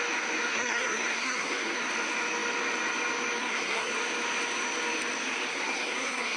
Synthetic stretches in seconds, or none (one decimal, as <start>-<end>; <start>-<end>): 0.5-1.9; 3.4-3.9; 5.5-6.4